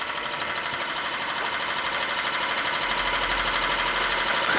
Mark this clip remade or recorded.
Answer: recorded